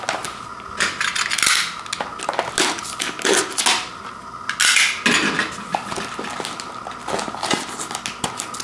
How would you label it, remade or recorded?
recorded